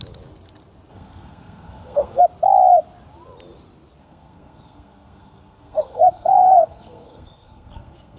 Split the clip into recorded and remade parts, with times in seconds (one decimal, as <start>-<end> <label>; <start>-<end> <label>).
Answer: 0.0-0.9 recorded; 0.9-2.2 remade; 2.2-4.0 recorded; 4.0-8.2 remade